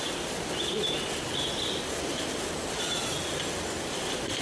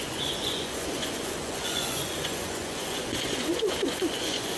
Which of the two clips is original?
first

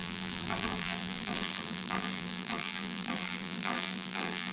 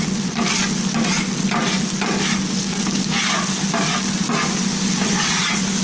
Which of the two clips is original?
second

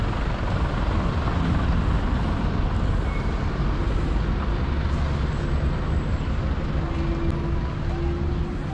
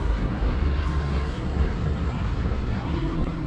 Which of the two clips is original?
first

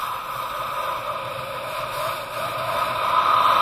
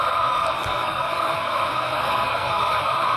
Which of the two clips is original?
first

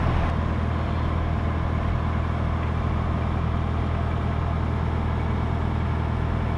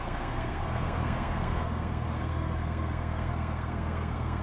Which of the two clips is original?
first